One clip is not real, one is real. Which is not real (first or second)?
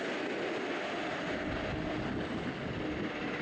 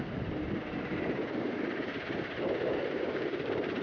second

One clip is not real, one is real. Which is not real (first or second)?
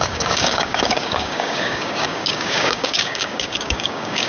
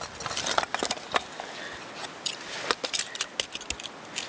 first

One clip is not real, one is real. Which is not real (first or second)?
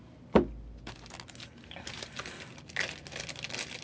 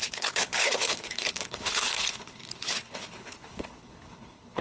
second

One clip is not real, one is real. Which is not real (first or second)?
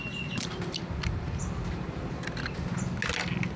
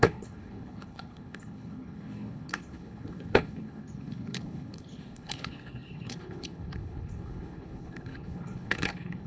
second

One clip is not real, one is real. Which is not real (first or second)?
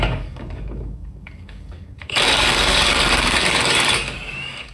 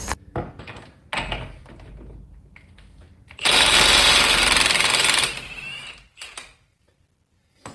first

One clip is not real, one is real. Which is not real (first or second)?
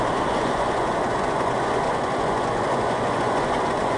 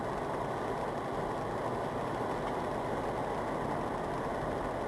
first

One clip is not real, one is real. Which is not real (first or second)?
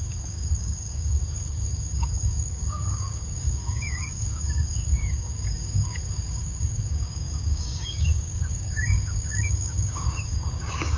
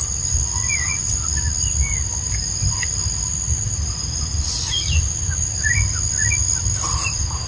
first